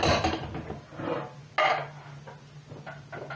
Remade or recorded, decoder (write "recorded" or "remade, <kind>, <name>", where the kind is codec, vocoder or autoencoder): recorded